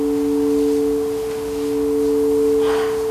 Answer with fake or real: real